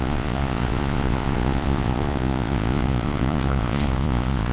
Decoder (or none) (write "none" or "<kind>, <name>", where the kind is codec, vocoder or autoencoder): vocoder, Vocos